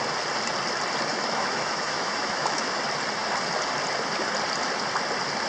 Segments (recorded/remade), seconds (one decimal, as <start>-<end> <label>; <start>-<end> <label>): 0.0-1.1 recorded; 1.1-2.8 remade; 2.8-5.5 recorded

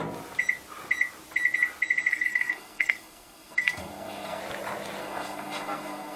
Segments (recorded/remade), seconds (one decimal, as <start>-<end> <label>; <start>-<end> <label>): 0.0-2.1 recorded; 2.1-4.4 remade; 4.4-5.0 recorded; 5.0-6.2 remade